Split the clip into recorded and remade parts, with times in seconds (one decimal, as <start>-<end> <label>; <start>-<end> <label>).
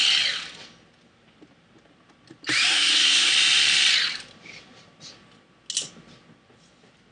0.0-2.7 recorded; 2.7-3.3 remade; 3.3-7.1 recorded